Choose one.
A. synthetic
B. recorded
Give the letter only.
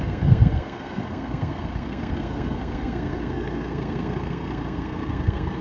A